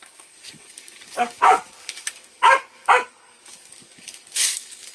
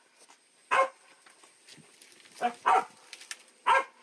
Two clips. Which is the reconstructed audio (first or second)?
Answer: first